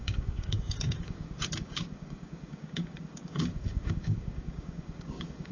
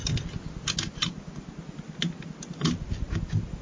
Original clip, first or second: second